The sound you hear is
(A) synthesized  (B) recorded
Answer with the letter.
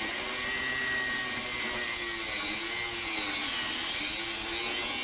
B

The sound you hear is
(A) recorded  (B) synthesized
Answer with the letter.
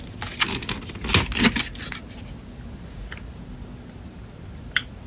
A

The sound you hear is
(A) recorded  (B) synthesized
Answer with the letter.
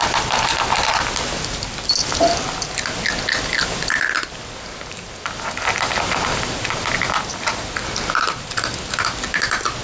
A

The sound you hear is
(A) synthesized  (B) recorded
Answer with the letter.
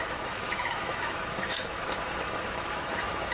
A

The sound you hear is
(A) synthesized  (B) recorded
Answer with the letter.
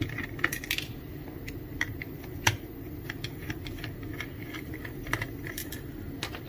B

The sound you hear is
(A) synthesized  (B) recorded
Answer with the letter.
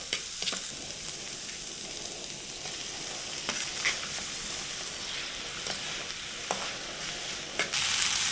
B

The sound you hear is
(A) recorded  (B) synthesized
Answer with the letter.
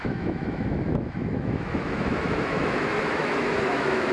B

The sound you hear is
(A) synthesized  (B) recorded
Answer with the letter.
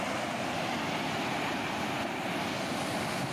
B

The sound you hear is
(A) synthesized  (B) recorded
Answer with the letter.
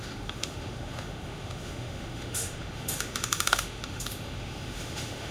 A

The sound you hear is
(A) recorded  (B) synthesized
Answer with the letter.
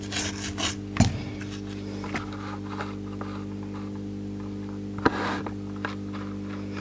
A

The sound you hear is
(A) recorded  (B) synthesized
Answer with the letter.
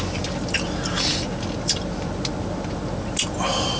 A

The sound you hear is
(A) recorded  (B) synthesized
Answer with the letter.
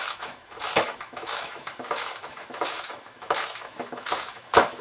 B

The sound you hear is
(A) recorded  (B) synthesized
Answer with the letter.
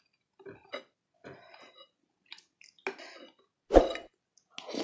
A